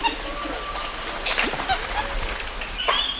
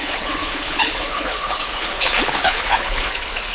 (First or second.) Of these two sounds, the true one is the first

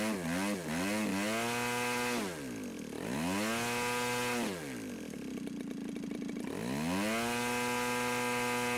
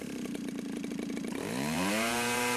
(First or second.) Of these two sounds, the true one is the first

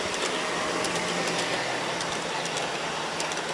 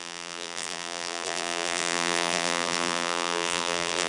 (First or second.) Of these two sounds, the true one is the first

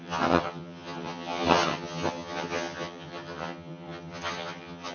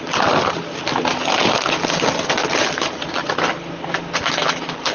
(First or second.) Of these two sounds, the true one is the second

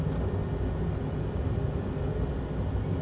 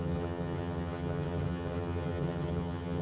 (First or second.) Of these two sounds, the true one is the first